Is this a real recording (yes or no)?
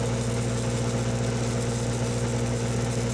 yes